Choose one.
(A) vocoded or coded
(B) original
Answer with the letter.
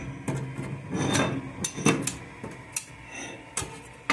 B